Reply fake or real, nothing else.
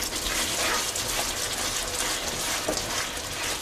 real